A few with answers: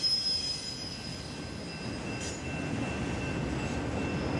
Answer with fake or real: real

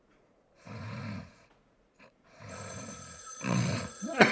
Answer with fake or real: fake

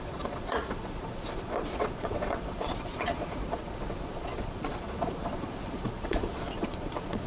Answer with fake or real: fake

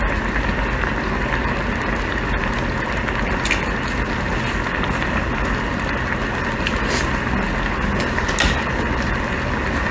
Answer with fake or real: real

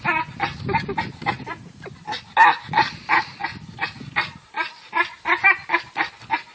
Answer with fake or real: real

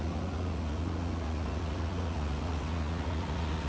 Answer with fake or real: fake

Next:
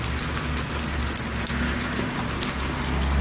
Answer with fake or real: real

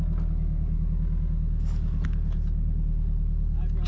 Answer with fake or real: real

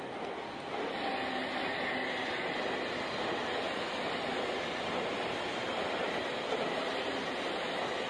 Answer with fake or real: real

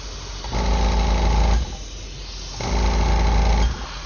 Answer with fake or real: real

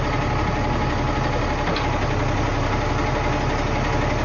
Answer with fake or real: real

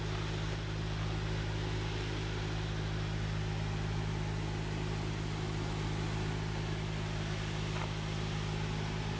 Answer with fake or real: real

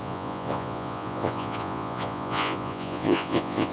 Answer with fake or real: fake